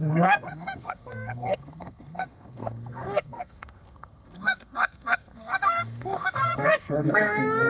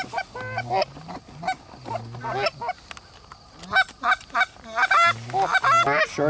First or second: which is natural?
second